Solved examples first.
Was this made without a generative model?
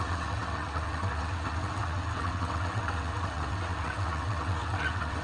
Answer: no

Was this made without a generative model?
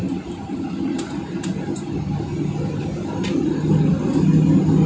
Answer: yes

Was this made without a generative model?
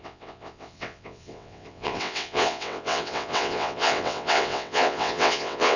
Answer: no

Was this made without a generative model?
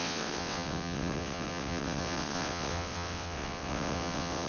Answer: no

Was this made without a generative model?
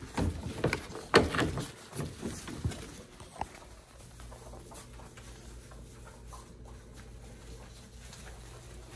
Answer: yes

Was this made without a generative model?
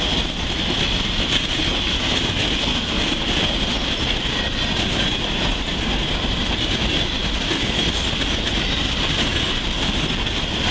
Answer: yes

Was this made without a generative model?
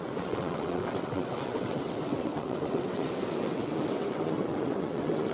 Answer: no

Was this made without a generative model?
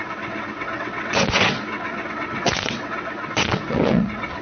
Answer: no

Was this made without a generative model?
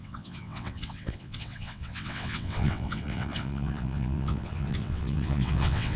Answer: no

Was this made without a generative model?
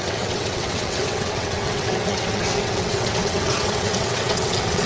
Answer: no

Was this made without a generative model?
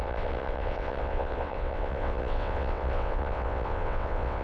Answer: no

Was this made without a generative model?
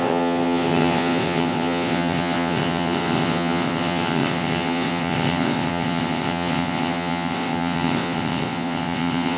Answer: no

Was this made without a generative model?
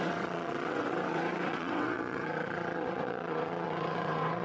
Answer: no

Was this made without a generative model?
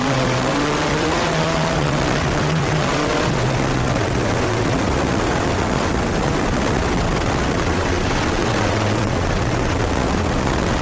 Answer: no